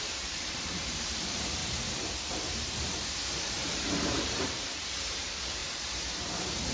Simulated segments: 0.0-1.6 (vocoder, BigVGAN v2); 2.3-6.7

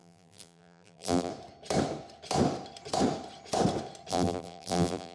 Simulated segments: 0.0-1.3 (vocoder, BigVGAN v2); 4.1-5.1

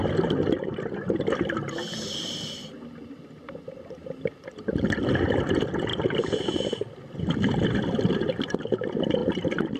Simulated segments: 5.9-6.5 (vocoder, BigVGAN v2); 9.2-9.8

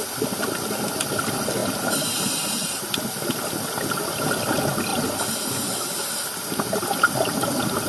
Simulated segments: 1.6-2.2 (vocoder, BigVGAN v2); 2.6-3.1; 4.9-7.1

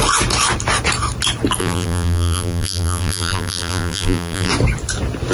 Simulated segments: 1.6-4.5 (vocoder, BigVGAN v2)